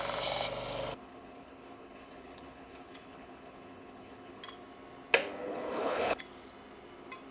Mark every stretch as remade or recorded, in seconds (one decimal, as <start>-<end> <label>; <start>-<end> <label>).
0.0-0.9 recorded; 0.9-4.4 remade; 4.4-5.4 recorded; 5.4-6.2 remade; 6.2-7.3 recorded